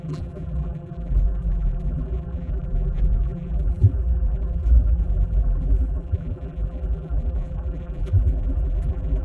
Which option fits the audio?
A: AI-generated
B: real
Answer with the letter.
A